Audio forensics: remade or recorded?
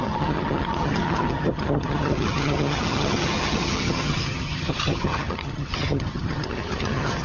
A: remade